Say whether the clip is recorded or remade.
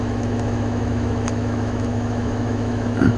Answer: remade